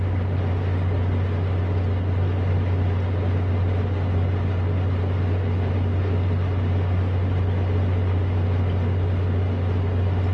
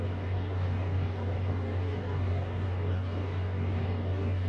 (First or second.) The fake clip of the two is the second